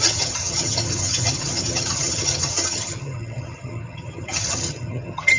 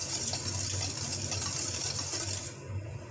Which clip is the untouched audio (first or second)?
second